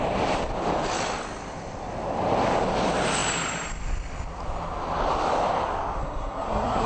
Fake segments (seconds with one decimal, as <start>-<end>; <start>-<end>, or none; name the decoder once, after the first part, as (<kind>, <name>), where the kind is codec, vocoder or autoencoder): 6.0-6.9 (codec, SNAC)